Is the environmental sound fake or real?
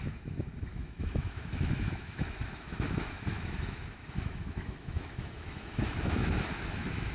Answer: fake